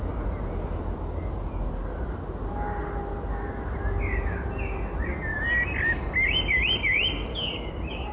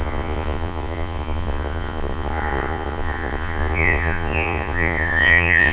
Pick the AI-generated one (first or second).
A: second